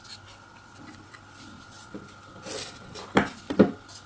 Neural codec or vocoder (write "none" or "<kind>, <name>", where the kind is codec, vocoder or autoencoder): none